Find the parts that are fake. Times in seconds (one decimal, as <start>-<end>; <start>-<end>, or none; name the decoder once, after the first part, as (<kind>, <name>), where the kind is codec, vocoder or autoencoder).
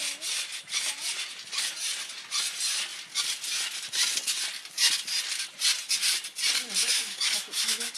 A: 6.8-8.0 (autoencoder, DAC-VAE)